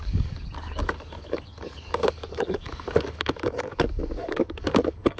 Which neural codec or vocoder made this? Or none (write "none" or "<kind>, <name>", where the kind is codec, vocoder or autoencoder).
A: codec, DAC